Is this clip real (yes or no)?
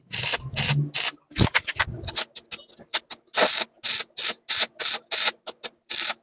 yes